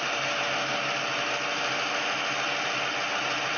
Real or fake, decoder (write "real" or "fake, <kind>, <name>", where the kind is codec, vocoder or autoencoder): real